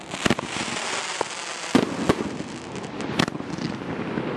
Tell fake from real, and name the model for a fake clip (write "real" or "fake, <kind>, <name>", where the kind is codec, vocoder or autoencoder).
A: real